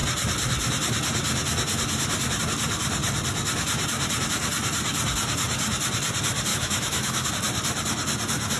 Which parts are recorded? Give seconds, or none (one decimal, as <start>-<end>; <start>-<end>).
0.0-6.5; 7.3-8.6